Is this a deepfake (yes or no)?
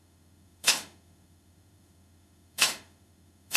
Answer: yes